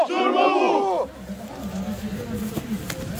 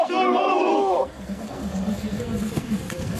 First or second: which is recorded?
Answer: first